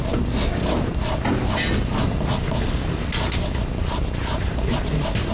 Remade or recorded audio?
recorded